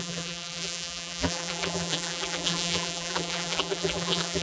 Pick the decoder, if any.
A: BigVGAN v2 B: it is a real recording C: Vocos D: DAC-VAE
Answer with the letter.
A